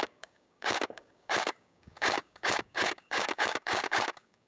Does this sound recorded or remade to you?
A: remade